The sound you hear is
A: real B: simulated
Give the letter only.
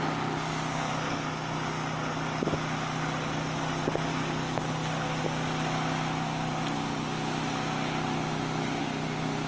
A